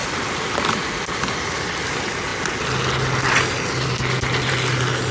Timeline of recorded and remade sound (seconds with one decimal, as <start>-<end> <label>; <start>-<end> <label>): 0.0-5.1 recorded